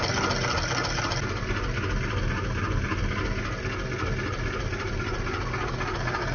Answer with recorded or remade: recorded